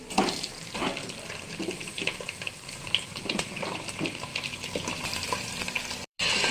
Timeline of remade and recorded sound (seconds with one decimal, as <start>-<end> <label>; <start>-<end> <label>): 0.0-0.8 remade; 0.8-1.4 recorded; 1.4-4.3 remade; 4.3-4.9 recorded; 4.9-6.5 remade